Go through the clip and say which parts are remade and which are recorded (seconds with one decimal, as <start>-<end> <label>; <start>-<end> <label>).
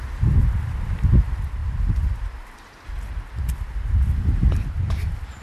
0.0-5.4 recorded